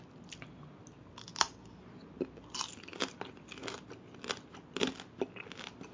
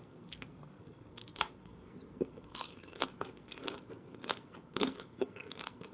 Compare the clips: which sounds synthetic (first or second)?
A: second